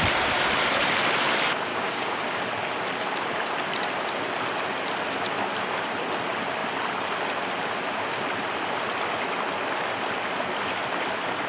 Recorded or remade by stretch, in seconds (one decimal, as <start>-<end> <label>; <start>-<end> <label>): 0.0-1.7 recorded; 1.7-2.4 remade; 2.4-11.5 recorded